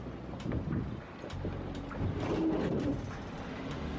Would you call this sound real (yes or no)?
yes